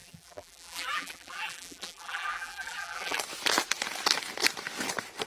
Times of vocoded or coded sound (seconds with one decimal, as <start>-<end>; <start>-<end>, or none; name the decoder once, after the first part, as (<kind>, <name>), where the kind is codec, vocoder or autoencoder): 0.0-3.2 (vocoder, BigVGAN v2)